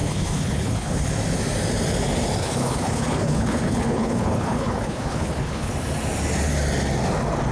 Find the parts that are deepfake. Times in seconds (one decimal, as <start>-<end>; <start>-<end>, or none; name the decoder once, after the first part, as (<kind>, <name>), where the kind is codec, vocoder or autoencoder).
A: 0.0-1.1 (codec, HILCodec); 2.4-5.7